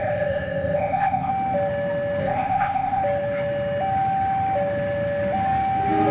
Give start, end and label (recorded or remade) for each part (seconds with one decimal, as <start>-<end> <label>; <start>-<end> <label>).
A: 0.0-1.3 remade; 1.3-2.2 recorded; 2.2-3.0 remade; 3.0-6.1 recorded